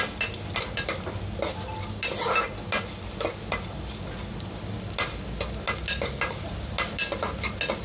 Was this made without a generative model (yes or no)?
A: yes